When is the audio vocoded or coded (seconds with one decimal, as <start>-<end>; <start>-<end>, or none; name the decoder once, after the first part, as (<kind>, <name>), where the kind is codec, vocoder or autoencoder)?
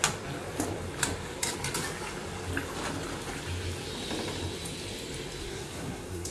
5.4-6.3 (codec, SNAC)